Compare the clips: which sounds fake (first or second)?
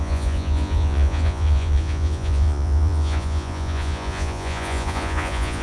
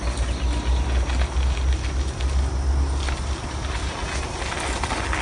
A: first